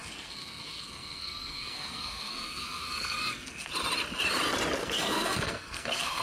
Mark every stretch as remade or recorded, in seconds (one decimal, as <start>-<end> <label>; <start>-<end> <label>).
0.0-3.7 remade; 3.7-4.8 recorded; 4.8-6.2 remade